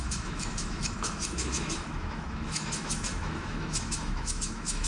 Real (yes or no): no